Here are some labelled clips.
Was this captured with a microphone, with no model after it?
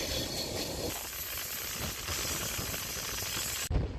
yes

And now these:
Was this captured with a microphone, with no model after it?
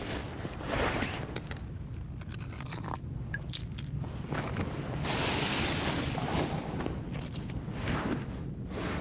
yes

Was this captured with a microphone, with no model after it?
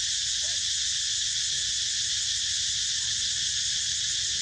yes